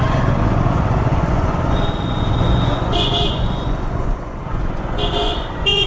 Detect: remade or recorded remade